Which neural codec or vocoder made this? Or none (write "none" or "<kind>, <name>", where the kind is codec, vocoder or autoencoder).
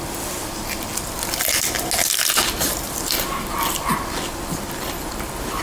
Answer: none